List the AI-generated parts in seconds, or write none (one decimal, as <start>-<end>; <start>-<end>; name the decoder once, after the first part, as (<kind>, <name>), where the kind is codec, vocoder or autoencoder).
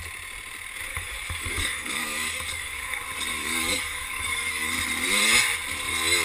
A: 0.9-3.0 (codec, DAC); 3.4-4.7